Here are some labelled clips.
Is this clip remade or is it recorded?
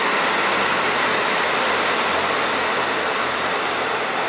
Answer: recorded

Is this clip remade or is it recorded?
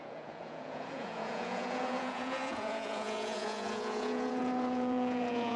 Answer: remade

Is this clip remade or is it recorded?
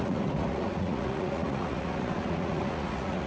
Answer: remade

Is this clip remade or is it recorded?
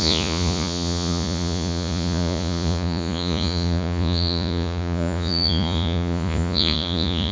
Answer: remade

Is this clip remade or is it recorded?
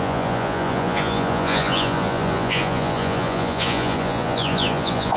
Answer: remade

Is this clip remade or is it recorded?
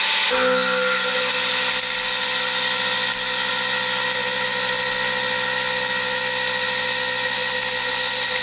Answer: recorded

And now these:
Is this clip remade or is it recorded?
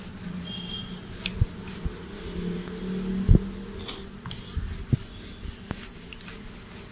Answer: recorded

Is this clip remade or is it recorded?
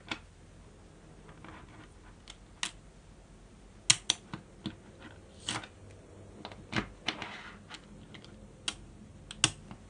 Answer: recorded